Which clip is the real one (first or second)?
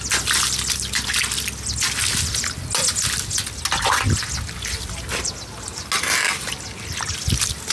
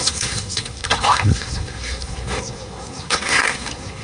first